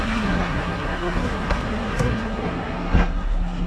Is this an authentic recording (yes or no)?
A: no